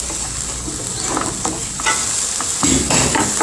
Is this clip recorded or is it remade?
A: recorded